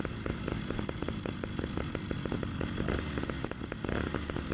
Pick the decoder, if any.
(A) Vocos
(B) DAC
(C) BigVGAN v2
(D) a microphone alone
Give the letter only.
D